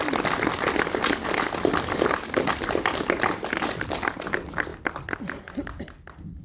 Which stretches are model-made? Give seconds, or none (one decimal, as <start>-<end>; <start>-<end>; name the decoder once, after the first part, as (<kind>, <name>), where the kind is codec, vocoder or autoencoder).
none